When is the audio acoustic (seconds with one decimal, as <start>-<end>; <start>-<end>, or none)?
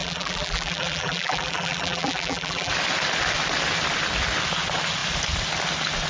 2.7-6.1